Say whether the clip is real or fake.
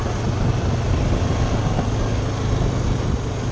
real